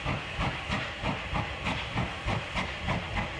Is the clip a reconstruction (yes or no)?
no